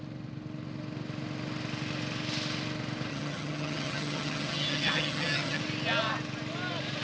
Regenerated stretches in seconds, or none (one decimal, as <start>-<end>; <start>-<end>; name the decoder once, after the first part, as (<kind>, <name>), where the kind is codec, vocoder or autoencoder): 3.1-5.6 (vocoder, HiFi-GAN)